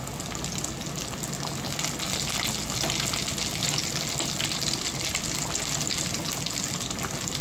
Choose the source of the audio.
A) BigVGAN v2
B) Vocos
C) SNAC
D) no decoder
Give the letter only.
D